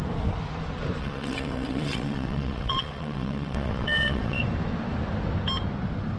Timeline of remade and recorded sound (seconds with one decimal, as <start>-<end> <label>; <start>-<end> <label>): 0.0-1.0 recorded; 1.0-4.4 remade; 4.4-6.2 recorded

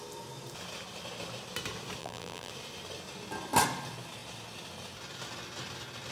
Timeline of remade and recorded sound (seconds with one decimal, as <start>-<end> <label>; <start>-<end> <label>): 0.0-2.0 recorded; 2.0-2.5 remade; 2.5-6.1 recorded

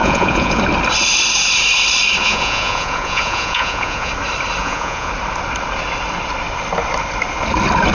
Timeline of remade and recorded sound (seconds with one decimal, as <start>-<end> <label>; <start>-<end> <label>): 0.0-0.6 remade; 0.6-2.2 recorded; 2.2-4.1 remade; 4.1-4.6 recorded; 4.6-5.1 remade; 5.1-7.9 recorded

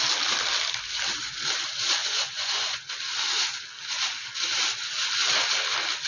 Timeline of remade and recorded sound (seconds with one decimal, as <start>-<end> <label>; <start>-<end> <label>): 0.0-2.0 recorded; 2.0-2.9 remade; 2.9-6.1 recorded

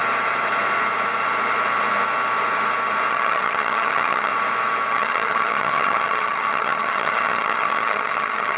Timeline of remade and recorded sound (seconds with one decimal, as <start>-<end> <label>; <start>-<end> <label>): 0.0-3.1 recorded; 3.1-4.3 remade; 4.3-4.9 recorded; 4.9-8.6 remade

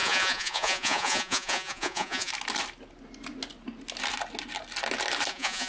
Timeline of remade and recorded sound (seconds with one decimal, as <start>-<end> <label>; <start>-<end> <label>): 0.0-2.3 remade; 2.3-5.3 recorded; 5.3-5.7 remade

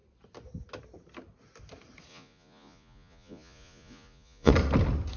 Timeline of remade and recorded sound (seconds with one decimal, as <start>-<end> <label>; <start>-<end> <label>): 0.0-2.1 recorded; 2.1-4.5 remade; 4.5-5.2 recorded

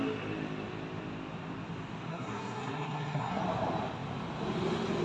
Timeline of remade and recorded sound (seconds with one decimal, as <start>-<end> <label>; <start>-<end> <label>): 0.0-2.1 recorded; 2.1-3.4 remade; 3.4-5.0 recorded